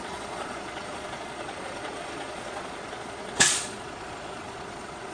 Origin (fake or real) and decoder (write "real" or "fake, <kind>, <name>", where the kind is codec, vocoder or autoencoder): fake, vocoder, Vocos